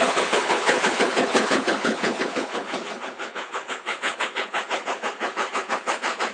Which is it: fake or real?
fake